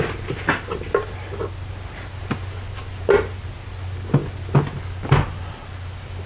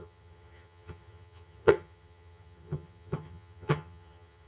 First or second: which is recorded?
first